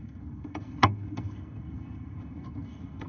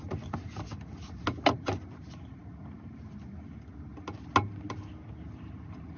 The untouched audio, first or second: second